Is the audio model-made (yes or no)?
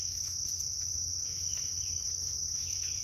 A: yes